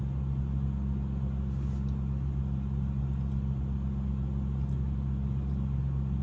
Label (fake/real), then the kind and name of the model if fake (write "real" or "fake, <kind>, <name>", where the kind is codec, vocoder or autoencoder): fake, vocoder, BigVGAN v2